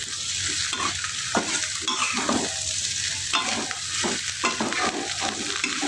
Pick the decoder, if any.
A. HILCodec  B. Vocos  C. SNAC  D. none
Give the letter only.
D